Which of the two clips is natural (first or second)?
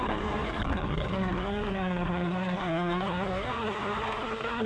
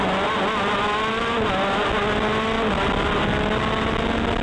second